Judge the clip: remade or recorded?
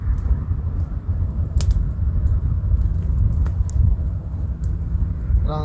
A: recorded